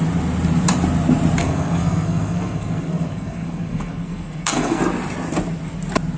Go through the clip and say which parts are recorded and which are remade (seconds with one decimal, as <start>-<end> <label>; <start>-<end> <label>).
0.0-1.4 recorded; 1.4-4.8 remade; 4.8-6.2 recorded